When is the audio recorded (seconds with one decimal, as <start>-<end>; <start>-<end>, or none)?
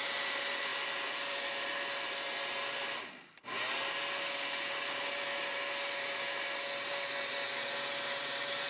0.0-8.7